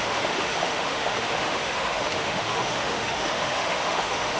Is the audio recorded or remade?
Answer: remade